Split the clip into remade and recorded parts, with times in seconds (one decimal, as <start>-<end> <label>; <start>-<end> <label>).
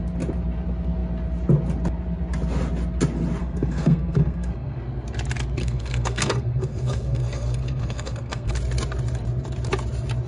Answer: 0.0-3.4 recorded; 3.4-4.8 remade; 4.8-5.6 recorded; 5.6-8.5 remade; 8.5-10.3 recorded